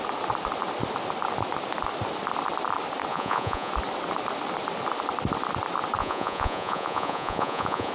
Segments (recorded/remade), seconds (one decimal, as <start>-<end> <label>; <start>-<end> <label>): 0.0-3.1 recorded; 3.1-3.7 remade; 3.7-6.0 recorded; 6.0-7.9 remade

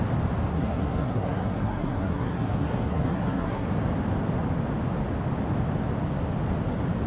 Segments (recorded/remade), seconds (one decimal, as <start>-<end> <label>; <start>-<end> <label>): 0.0-0.5 recorded; 0.5-3.7 remade; 3.7-7.1 recorded

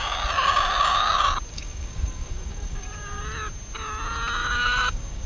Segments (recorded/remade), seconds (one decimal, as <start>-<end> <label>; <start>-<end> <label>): 0.0-1.5 recorded; 1.5-2.9 remade; 2.9-4.4 recorded; 4.4-5.3 remade

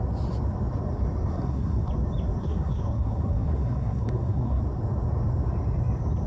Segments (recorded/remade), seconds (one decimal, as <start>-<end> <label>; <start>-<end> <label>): 0.0-1.3 recorded; 1.3-1.9 remade; 1.9-2.4 recorded; 2.4-4.6 remade; 4.6-6.3 recorded

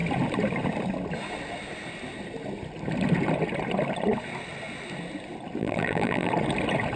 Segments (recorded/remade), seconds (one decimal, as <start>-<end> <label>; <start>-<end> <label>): 0.0-5.6 recorded; 5.6-6.3 remade; 6.3-7.0 recorded

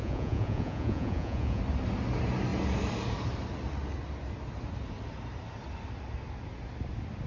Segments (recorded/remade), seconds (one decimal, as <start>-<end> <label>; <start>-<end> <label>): 0.0-1.6 remade; 1.6-7.3 recorded